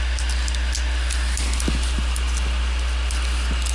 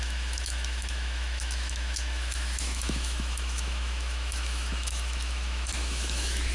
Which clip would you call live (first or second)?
first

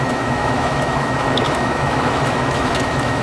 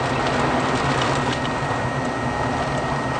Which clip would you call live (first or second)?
second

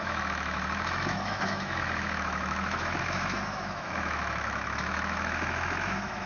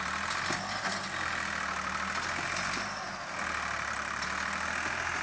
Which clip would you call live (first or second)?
second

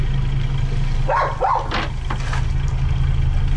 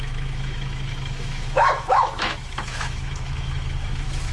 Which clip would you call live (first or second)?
first